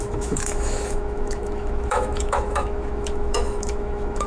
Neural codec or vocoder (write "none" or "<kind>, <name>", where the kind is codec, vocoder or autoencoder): autoencoder, DAC-VAE